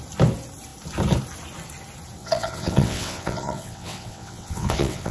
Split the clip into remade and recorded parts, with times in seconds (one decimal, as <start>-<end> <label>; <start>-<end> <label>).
0.0-2.2 recorded; 2.2-5.1 remade